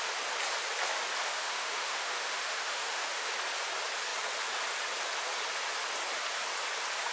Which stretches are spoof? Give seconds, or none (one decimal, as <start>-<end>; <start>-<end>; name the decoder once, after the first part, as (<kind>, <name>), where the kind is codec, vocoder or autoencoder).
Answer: 1.2-3.3 (autoencoder, DAC-VAE)